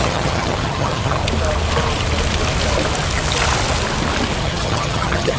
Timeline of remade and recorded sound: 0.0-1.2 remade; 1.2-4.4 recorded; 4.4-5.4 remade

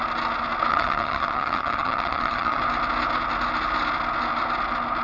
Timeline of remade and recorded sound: 0.0-0.7 recorded; 0.7-2.6 remade; 2.6-5.0 recorded